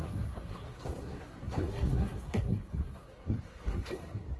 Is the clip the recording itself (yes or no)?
no